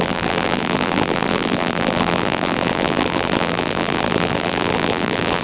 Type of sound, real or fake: fake